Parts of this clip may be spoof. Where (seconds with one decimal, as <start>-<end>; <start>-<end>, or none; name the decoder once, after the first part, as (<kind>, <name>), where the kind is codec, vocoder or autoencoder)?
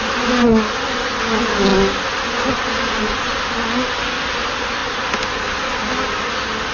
none